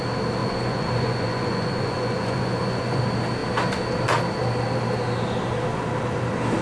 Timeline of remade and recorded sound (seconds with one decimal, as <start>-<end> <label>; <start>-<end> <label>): 0.0-0.4 recorded; 0.4-3.0 remade; 3.0-6.6 recorded